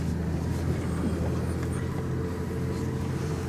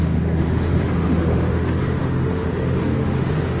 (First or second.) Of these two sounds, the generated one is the second